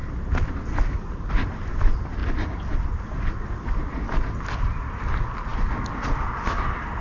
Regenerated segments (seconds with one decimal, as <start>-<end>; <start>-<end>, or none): none